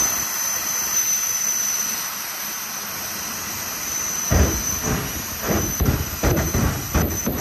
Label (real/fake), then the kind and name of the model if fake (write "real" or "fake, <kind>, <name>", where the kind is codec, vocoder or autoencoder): fake, vocoder, BigVGAN v2